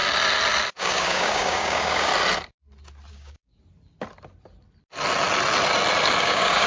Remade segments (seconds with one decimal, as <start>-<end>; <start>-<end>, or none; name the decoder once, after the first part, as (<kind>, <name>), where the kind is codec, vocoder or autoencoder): 0.8-2.1 (codec, DAC); 3.1-3.5; 6.2-6.7